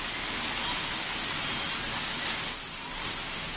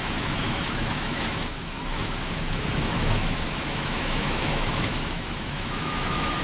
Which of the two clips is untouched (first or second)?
first